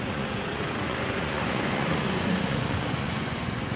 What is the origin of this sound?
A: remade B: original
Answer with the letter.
A